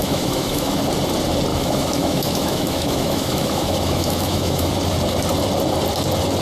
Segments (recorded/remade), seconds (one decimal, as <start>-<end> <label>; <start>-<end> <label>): 0.0-0.8 remade; 0.8-1.5 recorded; 1.5-4.7 remade; 4.7-6.4 recorded